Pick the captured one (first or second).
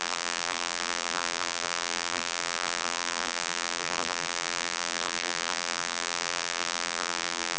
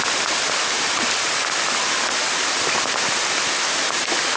second